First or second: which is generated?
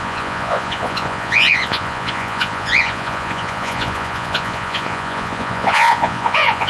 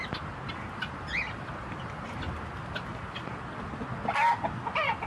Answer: first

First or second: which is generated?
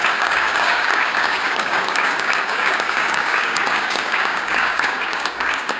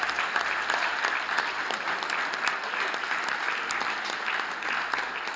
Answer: first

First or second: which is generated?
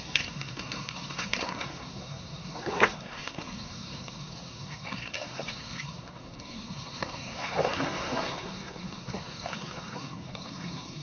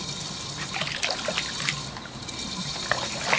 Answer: first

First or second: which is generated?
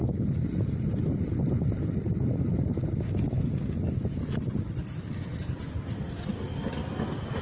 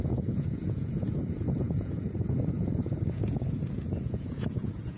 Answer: second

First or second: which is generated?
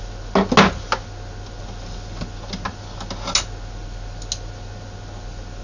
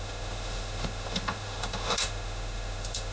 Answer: second